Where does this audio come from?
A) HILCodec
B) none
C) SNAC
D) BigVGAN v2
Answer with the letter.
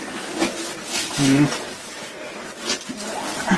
B